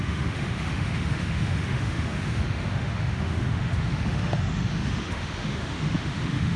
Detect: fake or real fake